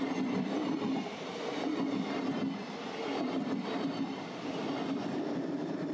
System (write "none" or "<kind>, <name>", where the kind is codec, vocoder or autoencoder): none